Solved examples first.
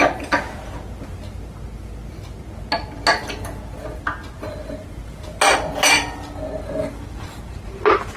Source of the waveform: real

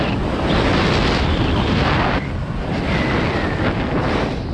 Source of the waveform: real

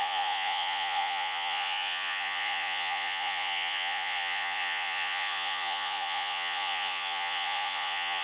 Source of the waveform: fake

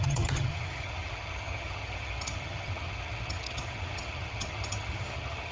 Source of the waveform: fake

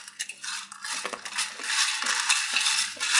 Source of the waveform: real